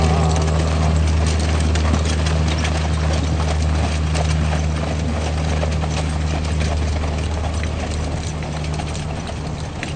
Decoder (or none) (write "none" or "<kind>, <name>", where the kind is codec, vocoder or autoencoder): none